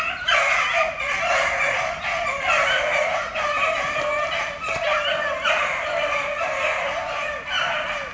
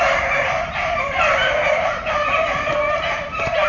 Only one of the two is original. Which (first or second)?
first